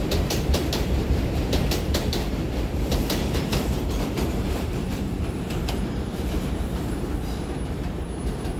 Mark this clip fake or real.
fake